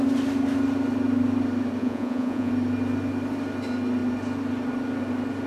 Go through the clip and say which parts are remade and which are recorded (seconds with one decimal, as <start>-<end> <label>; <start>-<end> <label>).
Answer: 0.0-1.8 recorded; 1.8-2.5 remade; 2.5-5.5 recorded